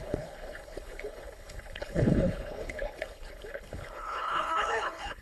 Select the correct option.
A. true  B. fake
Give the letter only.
B